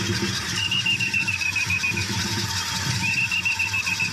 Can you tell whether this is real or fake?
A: real